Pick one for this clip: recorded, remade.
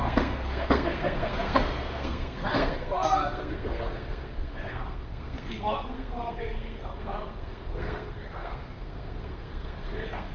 remade